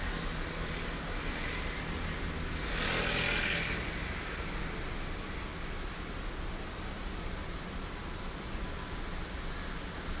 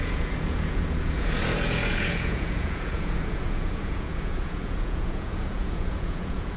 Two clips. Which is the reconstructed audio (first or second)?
second